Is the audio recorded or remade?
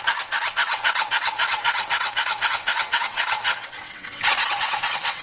remade